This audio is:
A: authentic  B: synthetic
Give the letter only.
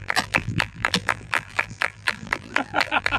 B